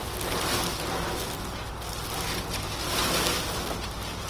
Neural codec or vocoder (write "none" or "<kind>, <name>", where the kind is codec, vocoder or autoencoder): none